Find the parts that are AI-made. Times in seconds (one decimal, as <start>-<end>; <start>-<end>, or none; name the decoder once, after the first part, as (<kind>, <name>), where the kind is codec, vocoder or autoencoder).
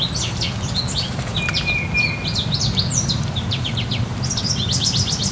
none